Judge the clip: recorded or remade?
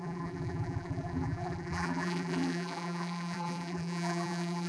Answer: remade